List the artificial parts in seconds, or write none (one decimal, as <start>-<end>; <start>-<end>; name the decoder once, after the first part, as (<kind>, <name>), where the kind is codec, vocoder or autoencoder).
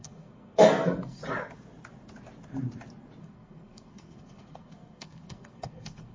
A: 0.0-1.2 (codec, SNAC); 3.2-6.1